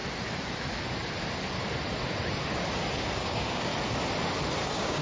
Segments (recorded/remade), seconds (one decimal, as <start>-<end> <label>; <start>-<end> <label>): 0.0-3.0 recorded; 3.0-3.7 remade; 3.7-4.6 recorded; 4.6-5.0 remade